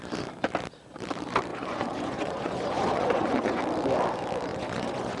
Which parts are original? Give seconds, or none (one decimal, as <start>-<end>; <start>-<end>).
0.0-1.5; 3.6-4.5